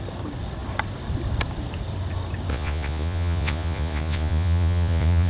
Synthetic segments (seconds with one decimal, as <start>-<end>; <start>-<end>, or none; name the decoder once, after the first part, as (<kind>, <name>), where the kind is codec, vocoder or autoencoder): 2.5-5.3 (vocoder, Vocos)